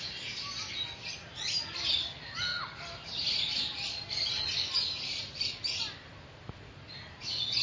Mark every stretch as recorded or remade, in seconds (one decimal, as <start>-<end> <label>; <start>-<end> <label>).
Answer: 0.0-2.5 recorded; 2.5-4.3 remade; 4.3-7.6 recorded